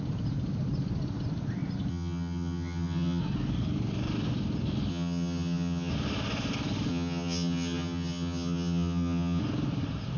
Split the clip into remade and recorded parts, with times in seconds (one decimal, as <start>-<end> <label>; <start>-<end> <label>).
0.0-1.9 recorded; 1.9-3.2 remade; 3.2-4.9 recorded; 4.9-5.9 remade; 5.9-6.9 recorded; 6.9-9.4 remade; 9.4-10.2 recorded